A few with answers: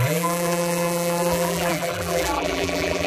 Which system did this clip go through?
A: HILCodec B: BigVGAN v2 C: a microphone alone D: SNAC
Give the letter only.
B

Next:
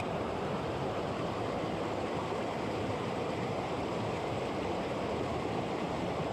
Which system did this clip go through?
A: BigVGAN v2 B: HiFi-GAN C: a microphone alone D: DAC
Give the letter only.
A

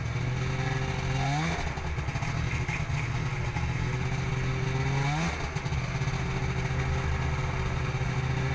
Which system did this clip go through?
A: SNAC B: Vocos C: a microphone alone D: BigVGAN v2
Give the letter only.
C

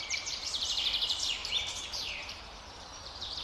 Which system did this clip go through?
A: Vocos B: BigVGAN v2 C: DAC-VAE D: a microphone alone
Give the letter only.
B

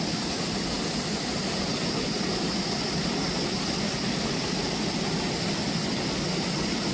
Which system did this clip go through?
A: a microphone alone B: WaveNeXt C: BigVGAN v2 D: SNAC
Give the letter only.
A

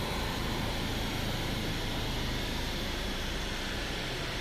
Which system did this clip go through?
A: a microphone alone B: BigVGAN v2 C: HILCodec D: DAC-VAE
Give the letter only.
B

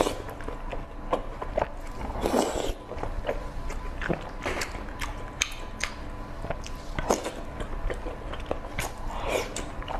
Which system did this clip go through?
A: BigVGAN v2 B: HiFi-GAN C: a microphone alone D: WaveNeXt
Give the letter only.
C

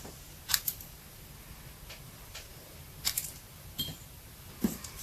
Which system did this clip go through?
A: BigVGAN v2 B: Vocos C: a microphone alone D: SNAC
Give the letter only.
A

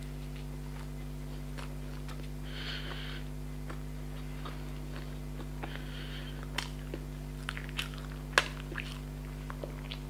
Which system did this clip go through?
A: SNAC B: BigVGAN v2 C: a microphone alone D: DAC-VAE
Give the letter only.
C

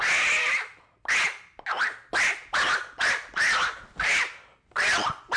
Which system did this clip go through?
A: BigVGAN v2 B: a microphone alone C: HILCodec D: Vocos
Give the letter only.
B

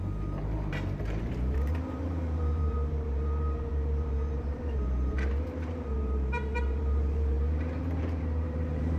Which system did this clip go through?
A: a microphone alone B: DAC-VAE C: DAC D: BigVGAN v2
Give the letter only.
D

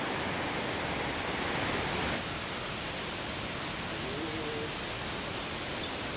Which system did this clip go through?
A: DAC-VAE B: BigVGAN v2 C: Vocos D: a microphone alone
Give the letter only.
D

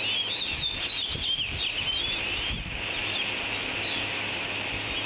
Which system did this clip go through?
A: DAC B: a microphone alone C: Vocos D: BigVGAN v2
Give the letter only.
B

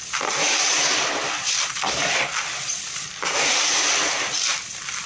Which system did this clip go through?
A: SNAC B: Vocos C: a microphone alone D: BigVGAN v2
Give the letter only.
D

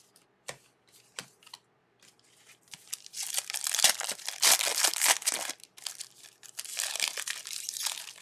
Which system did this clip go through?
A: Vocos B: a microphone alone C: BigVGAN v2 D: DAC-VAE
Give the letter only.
C